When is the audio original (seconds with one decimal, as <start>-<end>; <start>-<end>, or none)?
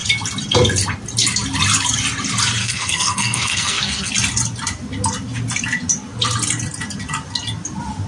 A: 0.0-2.6; 4.1-8.1